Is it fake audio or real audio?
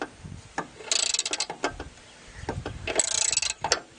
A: real